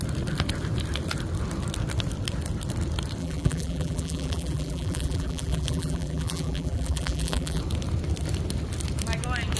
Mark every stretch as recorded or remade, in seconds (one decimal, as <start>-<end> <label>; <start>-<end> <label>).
0.0-3.2 recorded; 3.2-7.6 remade; 7.6-9.6 recorded